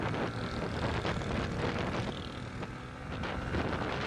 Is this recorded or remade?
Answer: recorded